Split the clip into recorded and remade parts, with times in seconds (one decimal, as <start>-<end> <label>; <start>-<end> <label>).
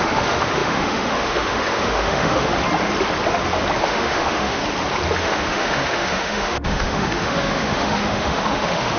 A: 0.0-2.5 remade; 2.5-3.8 recorded; 3.8-4.6 remade; 4.6-5.2 recorded; 5.2-9.0 remade